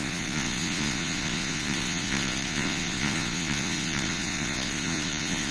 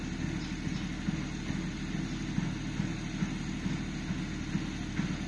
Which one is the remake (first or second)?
first